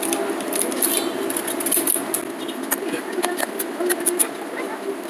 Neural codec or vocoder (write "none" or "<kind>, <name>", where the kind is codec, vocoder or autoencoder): none